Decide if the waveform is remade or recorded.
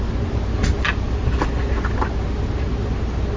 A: recorded